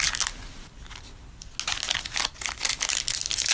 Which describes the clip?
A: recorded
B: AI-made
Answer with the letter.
A